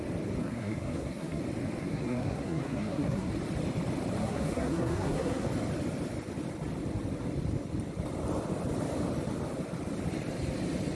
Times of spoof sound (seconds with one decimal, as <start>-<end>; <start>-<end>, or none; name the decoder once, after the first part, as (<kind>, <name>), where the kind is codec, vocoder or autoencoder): 0.4-1.4 (codec, SNAC); 1.8-3.3; 4.2-5.5